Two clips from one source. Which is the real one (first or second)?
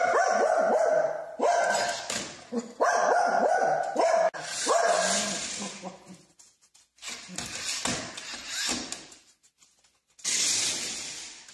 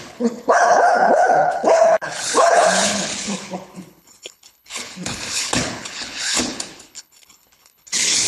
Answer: first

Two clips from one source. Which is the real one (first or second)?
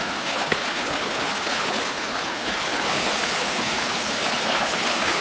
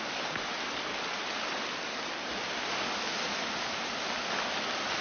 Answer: second